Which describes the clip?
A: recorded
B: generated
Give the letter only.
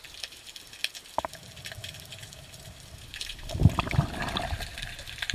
A